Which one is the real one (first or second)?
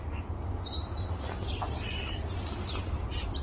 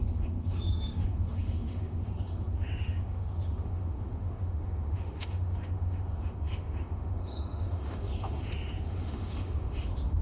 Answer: first